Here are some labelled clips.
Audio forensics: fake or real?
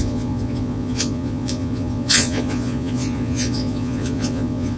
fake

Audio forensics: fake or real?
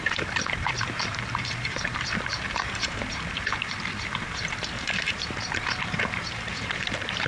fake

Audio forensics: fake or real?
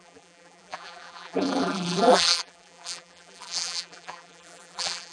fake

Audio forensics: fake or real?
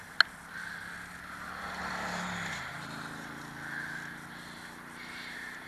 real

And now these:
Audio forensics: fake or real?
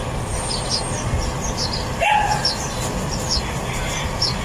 real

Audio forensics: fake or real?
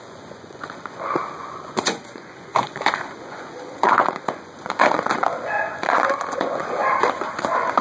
fake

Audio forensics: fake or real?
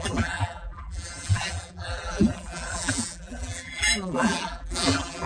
fake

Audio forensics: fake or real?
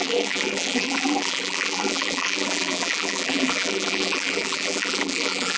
fake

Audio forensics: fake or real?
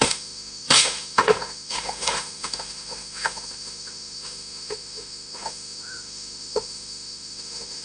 fake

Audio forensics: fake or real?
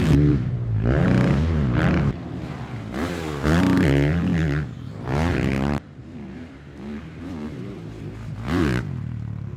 fake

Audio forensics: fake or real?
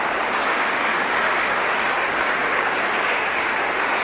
fake